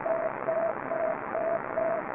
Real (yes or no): no